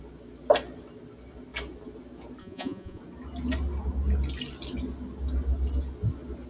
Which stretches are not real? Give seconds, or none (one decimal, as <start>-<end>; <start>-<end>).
2.4-3.0